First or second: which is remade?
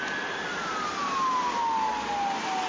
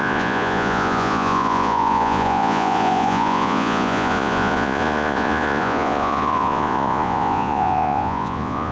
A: second